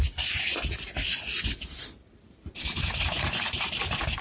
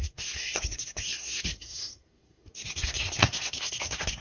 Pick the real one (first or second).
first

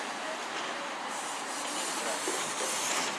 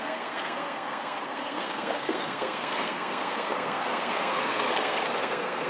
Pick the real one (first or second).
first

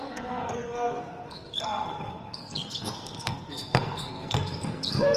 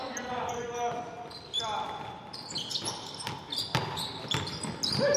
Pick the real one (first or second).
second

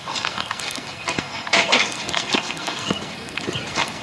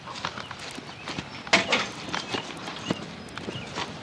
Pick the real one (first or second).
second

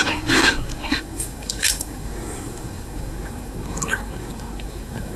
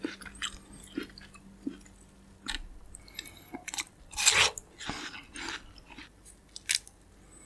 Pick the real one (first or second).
second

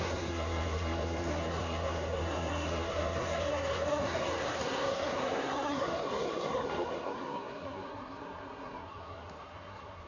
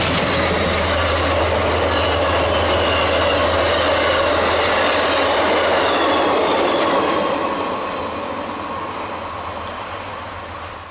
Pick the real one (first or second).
second